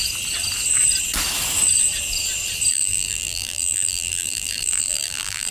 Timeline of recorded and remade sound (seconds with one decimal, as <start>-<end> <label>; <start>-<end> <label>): 0.0-2.7 recorded; 2.7-5.5 remade